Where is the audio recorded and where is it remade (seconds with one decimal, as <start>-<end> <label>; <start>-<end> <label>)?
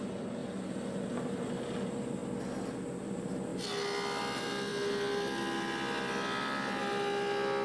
0.0-7.6 recorded